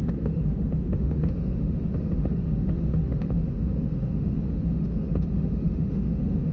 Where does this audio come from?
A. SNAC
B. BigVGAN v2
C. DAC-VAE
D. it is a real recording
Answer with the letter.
C